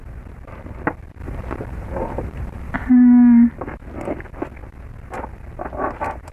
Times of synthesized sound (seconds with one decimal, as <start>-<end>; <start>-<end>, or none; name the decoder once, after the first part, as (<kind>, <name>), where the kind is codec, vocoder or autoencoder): 1.2-2.9 (vocoder, BigVGAN v2)